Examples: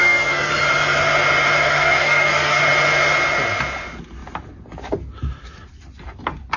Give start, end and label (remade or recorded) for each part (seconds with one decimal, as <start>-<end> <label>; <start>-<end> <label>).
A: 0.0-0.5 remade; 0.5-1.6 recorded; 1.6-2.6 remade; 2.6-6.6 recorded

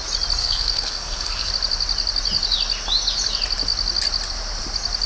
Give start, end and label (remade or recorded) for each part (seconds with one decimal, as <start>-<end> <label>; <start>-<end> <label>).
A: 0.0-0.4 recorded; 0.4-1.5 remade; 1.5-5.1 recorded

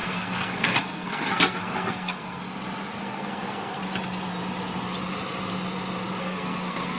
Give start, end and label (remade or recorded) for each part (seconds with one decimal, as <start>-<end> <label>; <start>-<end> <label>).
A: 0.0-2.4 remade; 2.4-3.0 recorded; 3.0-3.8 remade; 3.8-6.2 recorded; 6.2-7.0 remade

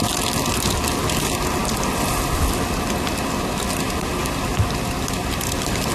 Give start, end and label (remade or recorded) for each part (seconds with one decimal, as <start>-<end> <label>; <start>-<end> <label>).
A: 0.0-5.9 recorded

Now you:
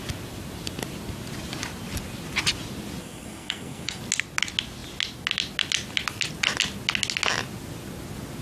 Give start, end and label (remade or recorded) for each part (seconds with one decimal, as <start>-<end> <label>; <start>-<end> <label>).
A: 0.0-3.0 recorded; 3.0-4.0 remade; 4.0-8.4 recorded

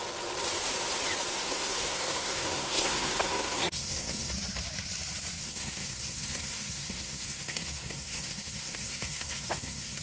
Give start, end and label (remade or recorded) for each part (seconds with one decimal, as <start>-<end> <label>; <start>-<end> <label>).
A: 0.0-1.3 recorded; 1.3-4.3 remade; 4.3-5.4 recorded; 5.4-10.0 remade